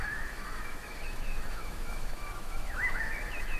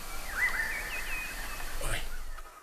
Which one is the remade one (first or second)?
first